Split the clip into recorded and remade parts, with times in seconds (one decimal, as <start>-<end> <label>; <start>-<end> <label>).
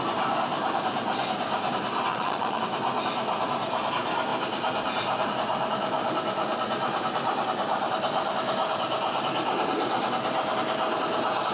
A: 0.0-2.1 recorded; 2.1-2.6 remade; 2.6-11.5 recorded